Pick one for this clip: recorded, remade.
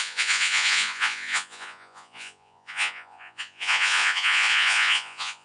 remade